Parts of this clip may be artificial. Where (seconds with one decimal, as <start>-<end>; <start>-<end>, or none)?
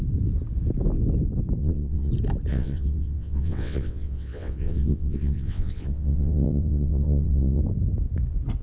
1.6-2.1; 2.5-7.6